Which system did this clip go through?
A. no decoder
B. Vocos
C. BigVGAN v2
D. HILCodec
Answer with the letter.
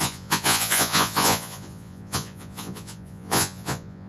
B